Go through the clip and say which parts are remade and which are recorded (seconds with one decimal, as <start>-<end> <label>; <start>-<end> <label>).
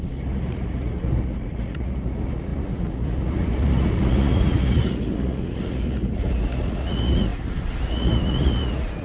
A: 0.0-9.0 remade